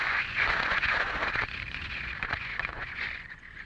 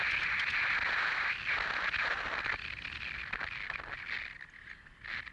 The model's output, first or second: first